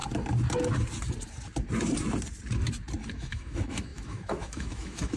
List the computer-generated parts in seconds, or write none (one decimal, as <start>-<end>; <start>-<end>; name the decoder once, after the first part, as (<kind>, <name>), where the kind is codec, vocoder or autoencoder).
3.1-5.2 (autoencoder, DAC-VAE)